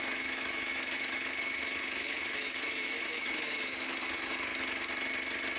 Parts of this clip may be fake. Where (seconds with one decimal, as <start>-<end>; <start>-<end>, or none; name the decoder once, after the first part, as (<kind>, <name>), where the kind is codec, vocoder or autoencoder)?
0.0-4.5 (autoencoder, DAC-VAE)